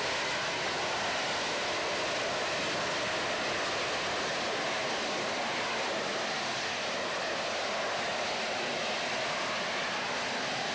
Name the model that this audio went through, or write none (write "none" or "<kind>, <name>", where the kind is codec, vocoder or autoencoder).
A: none